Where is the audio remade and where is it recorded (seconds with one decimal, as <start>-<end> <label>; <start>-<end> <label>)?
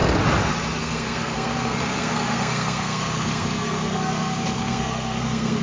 0.0-0.8 recorded; 0.8-5.6 remade